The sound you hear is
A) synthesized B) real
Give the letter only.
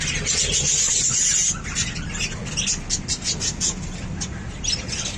B